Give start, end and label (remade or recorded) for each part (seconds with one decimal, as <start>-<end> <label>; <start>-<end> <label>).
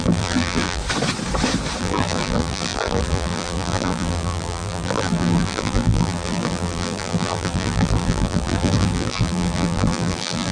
0.0-0.8 remade; 0.8-1.8 recorded; 1.8-10.5 remade